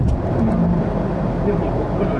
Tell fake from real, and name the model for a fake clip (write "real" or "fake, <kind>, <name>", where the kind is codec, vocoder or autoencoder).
real